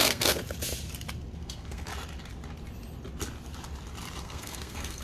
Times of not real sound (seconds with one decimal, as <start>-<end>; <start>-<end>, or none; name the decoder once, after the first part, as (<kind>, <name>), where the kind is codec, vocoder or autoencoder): 0.0-0.4 (codec, SNAC); 1.4-1.9; 4.2-5.0